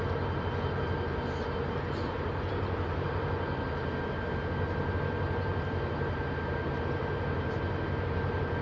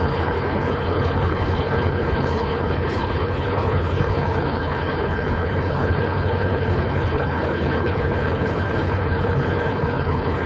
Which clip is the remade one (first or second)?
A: second